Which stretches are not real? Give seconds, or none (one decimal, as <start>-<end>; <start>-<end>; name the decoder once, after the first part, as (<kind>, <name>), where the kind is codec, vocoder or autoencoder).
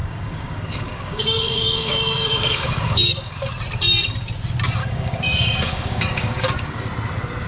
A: 0.0-3.5 (codec, DAC); 4.8-6.8